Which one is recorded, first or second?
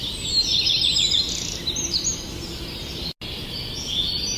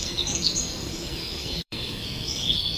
first